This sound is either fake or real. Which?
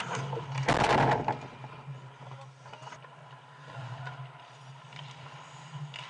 real